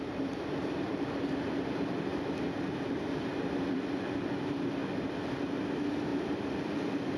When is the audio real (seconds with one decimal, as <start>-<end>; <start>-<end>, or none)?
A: 4.8-5.4